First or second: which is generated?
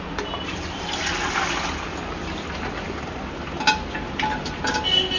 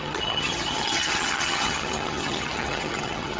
second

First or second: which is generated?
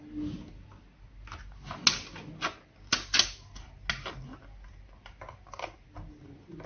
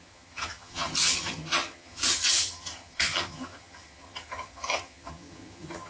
second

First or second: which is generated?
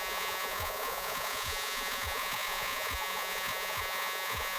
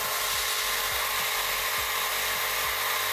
first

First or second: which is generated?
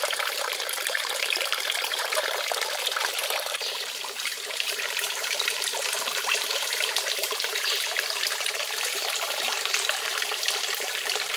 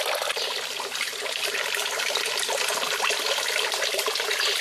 first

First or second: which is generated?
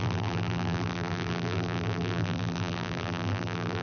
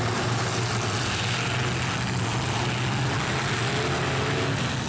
first